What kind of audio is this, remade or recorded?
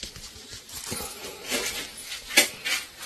recorded